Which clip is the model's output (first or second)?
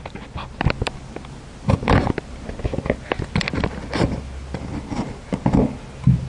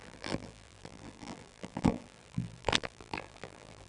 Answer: second